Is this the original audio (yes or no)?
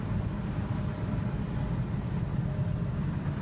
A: yes